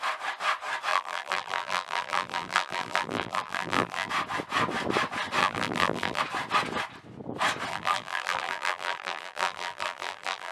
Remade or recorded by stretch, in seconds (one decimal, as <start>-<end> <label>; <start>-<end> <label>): 0.0-0.9 recorded; 0.9-4.1 remade; 4.1-5.4 recorded; 5.4-6.2 remade; 6.2-7.7 recorded; 7.7-10.5 remade